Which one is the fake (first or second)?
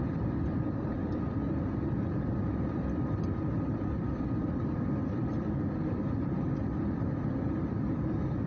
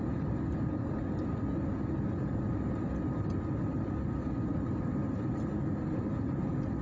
first